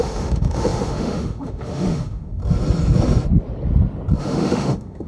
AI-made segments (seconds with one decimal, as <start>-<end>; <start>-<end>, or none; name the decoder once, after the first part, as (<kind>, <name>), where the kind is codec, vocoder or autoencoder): 0.0-2.4 (autoencoder, DAC-VAE); 4.2-5.1

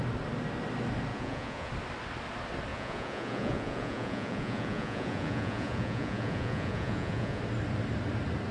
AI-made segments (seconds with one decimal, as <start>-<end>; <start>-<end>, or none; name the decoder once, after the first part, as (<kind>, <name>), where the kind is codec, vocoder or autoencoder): 1.1-1.7 (vocoder, Vocos); 2.7-7.4

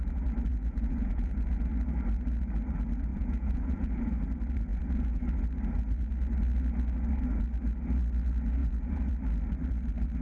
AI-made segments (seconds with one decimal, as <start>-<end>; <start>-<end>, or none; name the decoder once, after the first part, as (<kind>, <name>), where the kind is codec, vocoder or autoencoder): 0.5-1.7 (vocoder, Vocos); 3.1-4.1; 4.7-5.2; 8.6-9.1

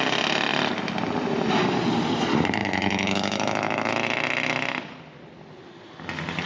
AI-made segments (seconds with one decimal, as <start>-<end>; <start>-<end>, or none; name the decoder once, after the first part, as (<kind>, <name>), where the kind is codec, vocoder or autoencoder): 2.6-3.9 (autoencoder, DAC-VAE)

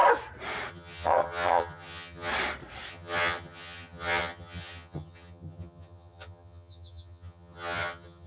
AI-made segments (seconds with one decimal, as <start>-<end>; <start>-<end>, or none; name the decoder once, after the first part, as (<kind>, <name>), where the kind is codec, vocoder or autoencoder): 0.7-2.3 (vocoder, HiFi-GAN); 2.9-8.3

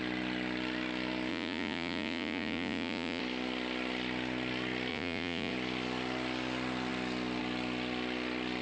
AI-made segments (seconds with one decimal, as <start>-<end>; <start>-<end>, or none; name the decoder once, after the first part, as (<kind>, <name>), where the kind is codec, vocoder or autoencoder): 1.3-3.2 (vocoder, Vocos); 4.9-5.5

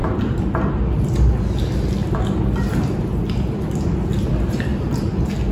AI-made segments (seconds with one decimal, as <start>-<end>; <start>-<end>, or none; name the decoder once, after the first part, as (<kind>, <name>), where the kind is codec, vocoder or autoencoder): none